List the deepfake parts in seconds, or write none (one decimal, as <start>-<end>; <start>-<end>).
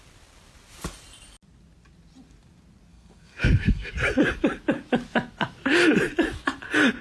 2.9-3.9